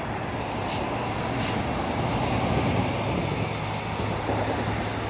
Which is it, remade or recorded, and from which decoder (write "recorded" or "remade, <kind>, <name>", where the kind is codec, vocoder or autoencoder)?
recorded